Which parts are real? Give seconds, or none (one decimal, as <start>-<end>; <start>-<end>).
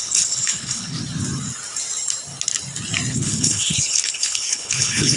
1.0-3.1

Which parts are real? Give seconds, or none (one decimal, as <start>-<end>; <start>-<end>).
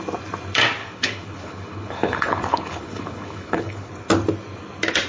0.0-0.8; 3.9-5.1